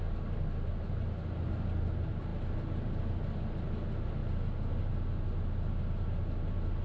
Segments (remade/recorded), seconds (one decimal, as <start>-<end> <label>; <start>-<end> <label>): 0.0-6.8 recorded